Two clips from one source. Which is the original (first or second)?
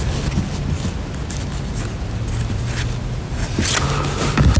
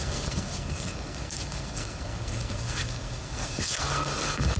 first